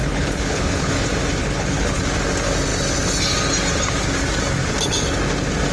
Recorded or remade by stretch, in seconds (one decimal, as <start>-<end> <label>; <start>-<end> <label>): 0.0-0.9 remade; 0.9-1.4 recorded; 1.4-2.0 remade; 2.0-5.7 recorded